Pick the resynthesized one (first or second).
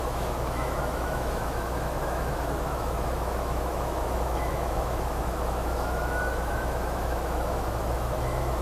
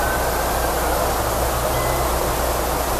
first